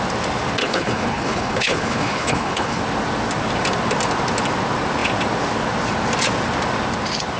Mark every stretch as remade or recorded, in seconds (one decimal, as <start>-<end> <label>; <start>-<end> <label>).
0.0-0.6 recorded; 0.6-2.8 remade; 2.8-7.4 recorded